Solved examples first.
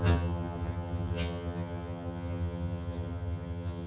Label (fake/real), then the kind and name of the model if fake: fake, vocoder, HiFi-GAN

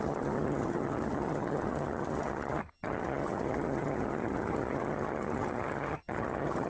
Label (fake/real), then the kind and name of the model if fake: fake, vocoder, HiFi-GAN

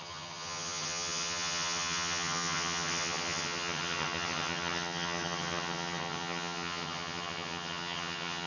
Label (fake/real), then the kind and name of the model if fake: fake, vocoder, HiFi-GAN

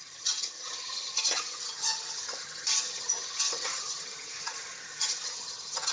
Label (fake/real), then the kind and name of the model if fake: fake, vocoder, HiFi-GAN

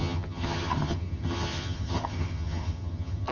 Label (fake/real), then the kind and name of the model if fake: fake, vocoder, HiFi-GAN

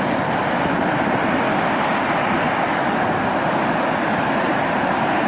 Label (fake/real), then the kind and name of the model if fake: real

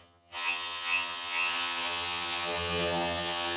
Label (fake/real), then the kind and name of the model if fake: fake, vocoder, HiFi-GAN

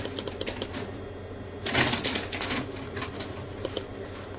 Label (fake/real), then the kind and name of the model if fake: real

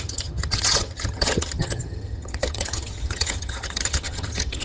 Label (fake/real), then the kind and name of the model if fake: fake, vocoder, HiFi-GAN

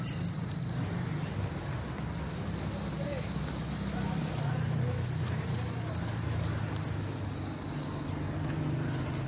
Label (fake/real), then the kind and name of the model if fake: real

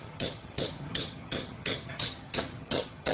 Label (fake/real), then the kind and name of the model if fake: fake, vocoder, HiFi-GAN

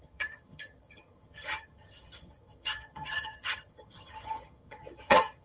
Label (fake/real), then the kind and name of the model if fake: fake, vocoder, HiFi-GAN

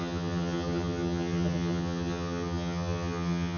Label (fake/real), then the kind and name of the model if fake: fake, vocoder, HiFi-GAN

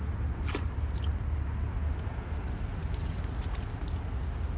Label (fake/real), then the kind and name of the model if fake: real